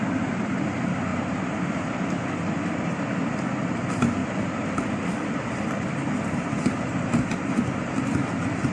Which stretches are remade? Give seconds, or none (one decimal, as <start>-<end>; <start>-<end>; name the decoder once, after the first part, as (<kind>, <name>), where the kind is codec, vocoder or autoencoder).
1.1-2.9 (vocoder, BigVGAN v2)